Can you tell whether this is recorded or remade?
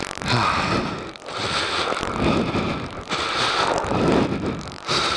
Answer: recorded